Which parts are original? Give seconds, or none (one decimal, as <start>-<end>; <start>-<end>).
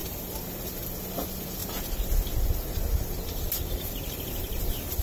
0.0-5.0